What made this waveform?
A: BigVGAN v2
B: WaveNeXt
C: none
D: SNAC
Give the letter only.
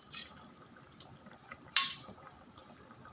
A